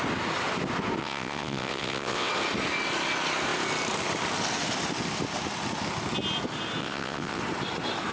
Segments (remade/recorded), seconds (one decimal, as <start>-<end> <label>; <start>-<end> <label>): 0.0-1.0 recorded; 1.0-2.3 remade; 2.3-6.8 recorded; 6.8-7.4 remade; 7.4-8.1 recorded

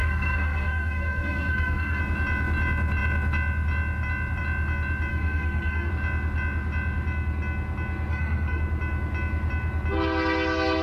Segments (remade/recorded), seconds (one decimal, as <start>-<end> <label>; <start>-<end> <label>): 0.0-2.0 remade; 2.0-5.1 recorded; 5.1-5.9 remade; 5.9-8.1 recorded; 8.1-8.6 remade; 8.6-10.8 recorded